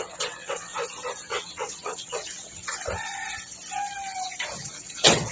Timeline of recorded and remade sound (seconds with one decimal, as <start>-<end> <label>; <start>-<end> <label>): 0.0-0.7 remade; 0.7-1.3 recorded; 1.3-2.6 remade; 2.6-4.6 recorded; 4.6-5.3 remade